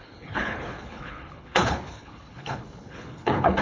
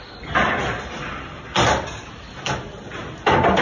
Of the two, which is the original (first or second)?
second